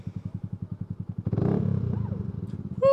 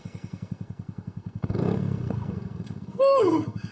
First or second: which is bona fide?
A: first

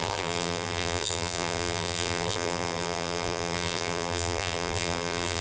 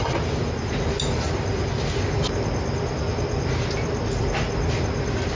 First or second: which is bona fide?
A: second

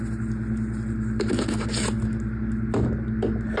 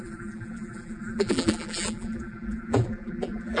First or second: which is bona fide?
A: first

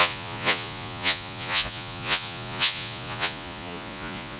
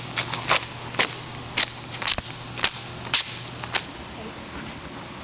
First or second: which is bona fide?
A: second